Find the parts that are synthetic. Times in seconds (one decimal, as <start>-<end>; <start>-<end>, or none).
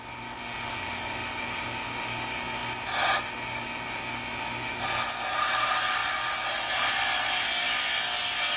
none